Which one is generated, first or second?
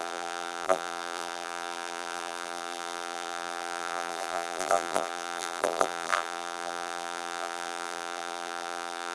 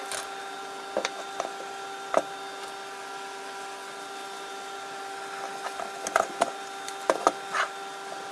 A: first